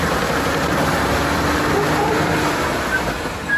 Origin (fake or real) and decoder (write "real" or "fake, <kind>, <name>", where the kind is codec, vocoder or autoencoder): real